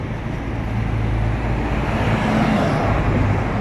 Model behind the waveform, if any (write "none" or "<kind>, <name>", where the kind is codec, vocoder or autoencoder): none